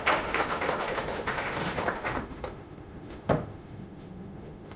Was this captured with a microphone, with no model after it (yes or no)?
no